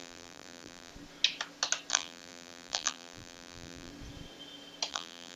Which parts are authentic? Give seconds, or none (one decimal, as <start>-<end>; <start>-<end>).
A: 0.9-1.9; 3.9-4.9